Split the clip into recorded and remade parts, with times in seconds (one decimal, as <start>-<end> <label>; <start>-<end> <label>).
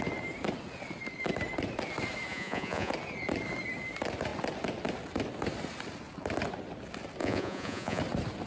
0.0-2.3 recorded; 2.3-2.9 remade; 2.9-7.2 recorded; 7.2-8.0 remade; 8.0-8.5 recorded